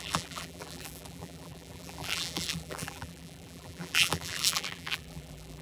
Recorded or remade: remade